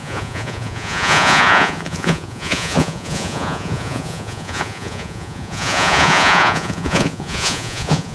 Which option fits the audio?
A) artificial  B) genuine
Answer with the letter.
A